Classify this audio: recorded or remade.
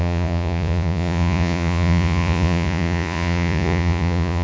remade